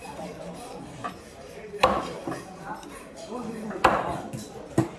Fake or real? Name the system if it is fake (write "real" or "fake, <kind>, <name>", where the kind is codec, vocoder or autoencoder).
fake, vocoder, BigVGAN v2